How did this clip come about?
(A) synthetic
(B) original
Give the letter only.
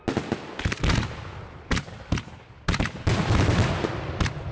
B